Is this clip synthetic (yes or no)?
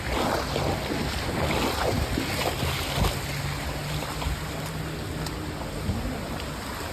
no